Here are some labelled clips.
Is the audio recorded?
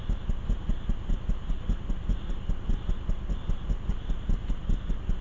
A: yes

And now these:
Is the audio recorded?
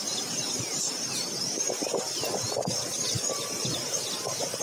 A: yes